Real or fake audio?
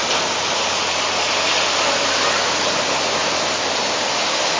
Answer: real